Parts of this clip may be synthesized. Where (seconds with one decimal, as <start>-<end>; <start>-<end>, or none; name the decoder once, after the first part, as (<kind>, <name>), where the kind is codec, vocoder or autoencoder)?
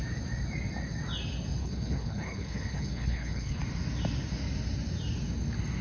1.6-3.6 (codec, HILCodec)